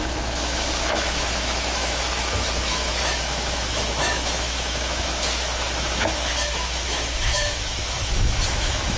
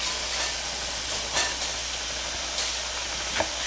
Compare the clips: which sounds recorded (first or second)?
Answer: second